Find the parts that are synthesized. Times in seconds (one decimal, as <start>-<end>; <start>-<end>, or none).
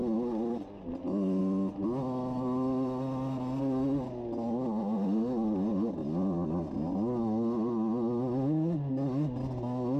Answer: none